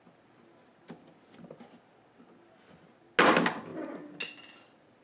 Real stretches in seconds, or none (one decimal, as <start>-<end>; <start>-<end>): 0.0-5.0